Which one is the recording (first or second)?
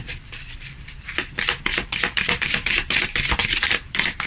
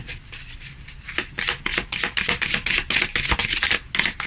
second